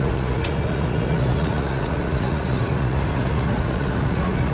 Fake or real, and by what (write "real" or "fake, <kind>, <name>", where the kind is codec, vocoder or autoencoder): fake, vocoder, Vocos